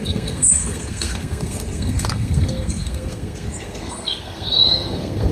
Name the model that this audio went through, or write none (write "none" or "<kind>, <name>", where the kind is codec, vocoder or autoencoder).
codec, SNAC